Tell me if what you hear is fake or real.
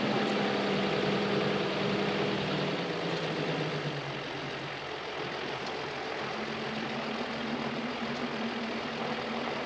real